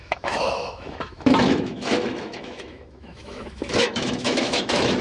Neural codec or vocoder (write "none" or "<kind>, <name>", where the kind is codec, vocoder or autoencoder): autoencoder, DAC-VAE